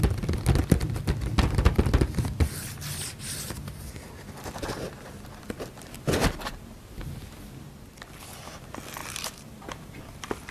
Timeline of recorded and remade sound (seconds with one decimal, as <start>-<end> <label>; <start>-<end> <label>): 0.0-9.0 recorded; 9.0-10.0 remade; 10.0-10.5 recorded